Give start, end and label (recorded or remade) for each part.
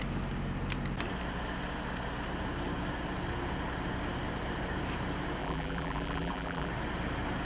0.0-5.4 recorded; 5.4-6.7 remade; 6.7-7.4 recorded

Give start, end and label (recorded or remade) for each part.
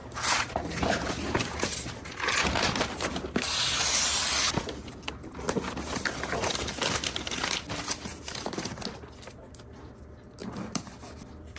0.0-8.1 recorded; 8.1-8.6 remade; 8.6-11.6 recorded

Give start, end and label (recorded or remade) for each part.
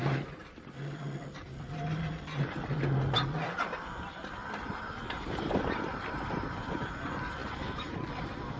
0.0-4.4 recorded; 4.4-6.9 remade; 6.9-8.6 recorded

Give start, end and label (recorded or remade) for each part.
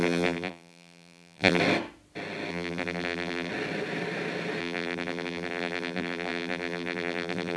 0.0-1.6 remade; 1.6-2.5 recorded; 2.5-3.5 remade; 3.5-4.6 recorded; 4.6-7.6 remade